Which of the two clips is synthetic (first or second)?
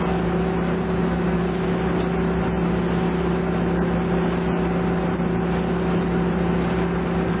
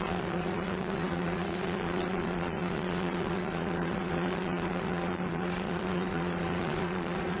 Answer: second